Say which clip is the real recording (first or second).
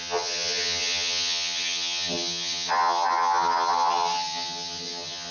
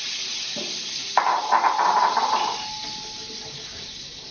second